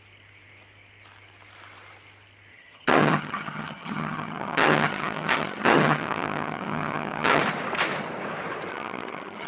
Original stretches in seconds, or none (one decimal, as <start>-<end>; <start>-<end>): 0.0-2.5; 7.4-8.7